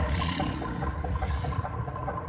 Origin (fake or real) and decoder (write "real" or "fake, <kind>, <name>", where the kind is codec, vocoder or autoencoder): fake, vocoder, Vocos